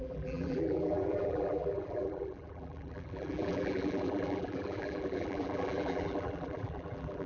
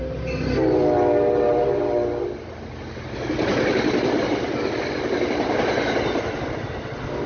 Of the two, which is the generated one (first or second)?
first